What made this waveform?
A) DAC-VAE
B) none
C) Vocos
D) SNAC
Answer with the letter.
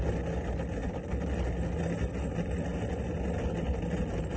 B